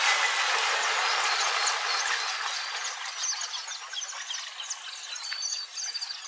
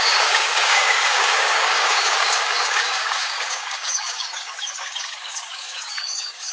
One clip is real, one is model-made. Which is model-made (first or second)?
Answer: second